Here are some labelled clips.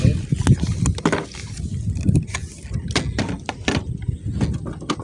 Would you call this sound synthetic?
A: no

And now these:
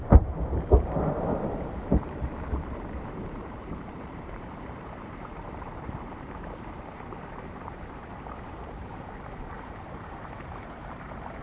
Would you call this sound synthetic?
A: yes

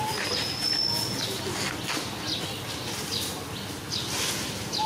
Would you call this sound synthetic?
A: no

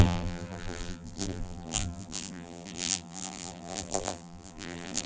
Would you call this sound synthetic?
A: yes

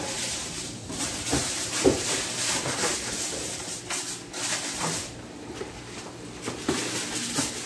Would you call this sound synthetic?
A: no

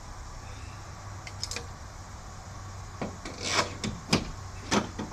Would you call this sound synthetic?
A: no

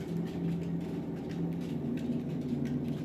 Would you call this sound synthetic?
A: no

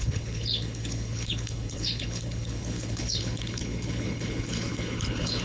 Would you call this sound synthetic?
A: yes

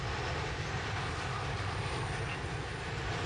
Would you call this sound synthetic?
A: no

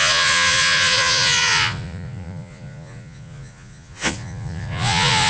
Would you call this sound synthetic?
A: yes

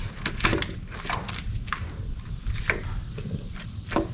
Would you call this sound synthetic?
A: no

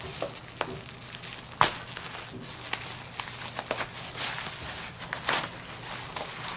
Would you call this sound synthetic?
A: no